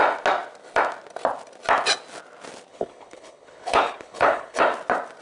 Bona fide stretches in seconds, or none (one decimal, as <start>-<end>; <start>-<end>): 0.0-2.7; 4.6-5.2

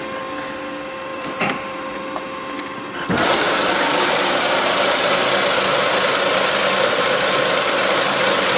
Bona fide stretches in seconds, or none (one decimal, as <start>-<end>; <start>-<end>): 0.0-1.1; 5.3-7.8

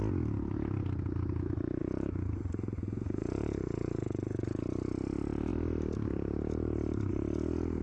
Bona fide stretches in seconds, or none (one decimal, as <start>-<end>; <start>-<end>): 0.0-1.8; 4.5-7.8